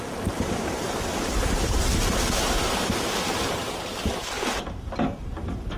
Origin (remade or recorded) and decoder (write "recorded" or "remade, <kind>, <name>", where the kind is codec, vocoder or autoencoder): recorded